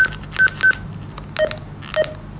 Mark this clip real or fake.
real